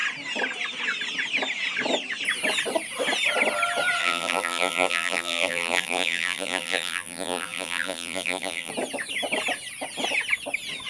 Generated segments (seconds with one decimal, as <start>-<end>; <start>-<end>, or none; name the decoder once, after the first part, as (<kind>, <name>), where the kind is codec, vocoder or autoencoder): 4.0-8.7 (vocoder, BigVGAN v2)